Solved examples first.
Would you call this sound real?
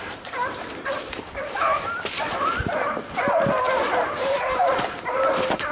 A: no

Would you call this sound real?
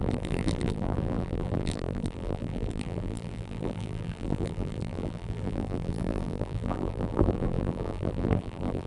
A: no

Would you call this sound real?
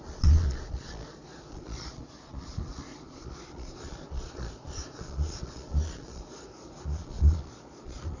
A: no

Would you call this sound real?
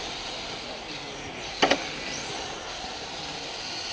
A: yes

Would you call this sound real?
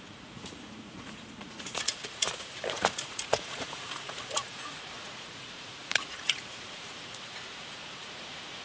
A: no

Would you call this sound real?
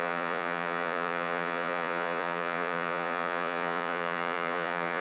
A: no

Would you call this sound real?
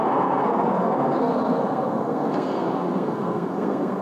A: no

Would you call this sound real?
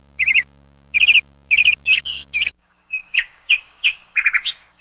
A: no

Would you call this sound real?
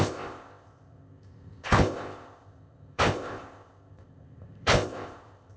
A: no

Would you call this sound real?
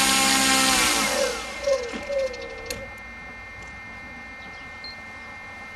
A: yes